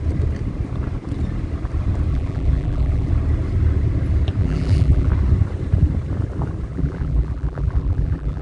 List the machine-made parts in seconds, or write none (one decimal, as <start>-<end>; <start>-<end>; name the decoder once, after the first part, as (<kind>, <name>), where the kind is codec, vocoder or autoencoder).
2.1-3.1 (vocoder, BigVGAN v2); 4.4-5.1; 6.7-8.4